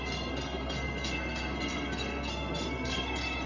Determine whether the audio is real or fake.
fake